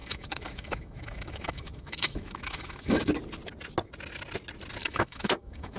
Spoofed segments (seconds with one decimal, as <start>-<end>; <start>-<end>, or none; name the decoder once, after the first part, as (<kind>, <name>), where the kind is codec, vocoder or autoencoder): 0.0-3.1 (autoencoder, DAC-VAE); 4.8-5.8